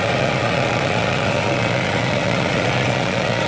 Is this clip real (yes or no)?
no